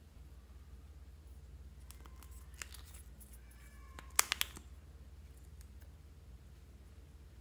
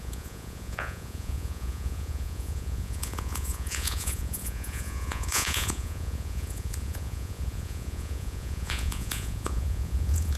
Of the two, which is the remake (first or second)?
second